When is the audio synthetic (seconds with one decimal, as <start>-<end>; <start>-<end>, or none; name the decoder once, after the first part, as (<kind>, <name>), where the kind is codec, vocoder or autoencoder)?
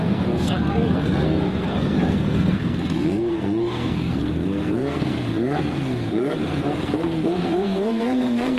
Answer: 0.0-8.6 (codec, SNAC)